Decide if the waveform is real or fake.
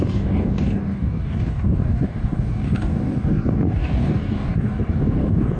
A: fake